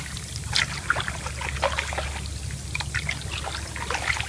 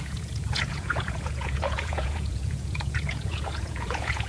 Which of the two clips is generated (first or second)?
second